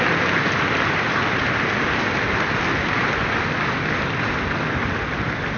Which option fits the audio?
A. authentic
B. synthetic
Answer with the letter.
A